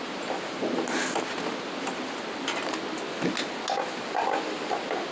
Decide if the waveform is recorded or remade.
recorded